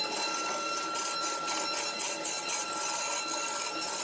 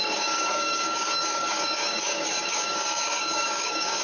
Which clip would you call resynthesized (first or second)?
second